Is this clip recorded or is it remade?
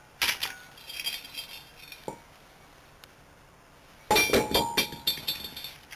recorded